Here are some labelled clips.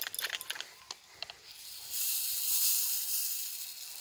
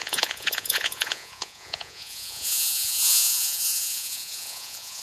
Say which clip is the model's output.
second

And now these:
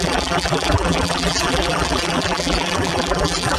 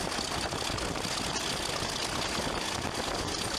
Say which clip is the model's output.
first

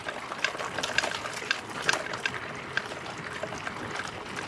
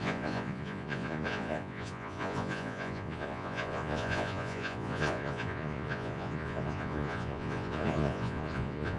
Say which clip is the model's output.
second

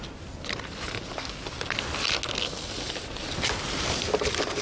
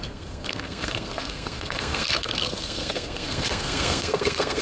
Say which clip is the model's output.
second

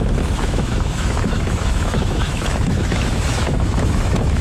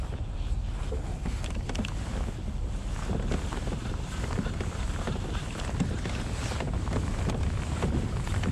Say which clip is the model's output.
first